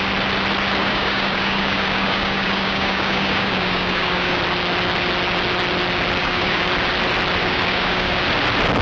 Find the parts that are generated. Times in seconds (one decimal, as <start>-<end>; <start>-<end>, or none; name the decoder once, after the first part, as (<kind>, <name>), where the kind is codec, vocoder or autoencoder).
0.8-4.4 (codec, DAC); 6.2-6.7; 7.4-8.2